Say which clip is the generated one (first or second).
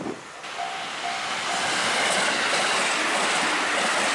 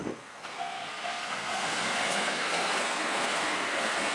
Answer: second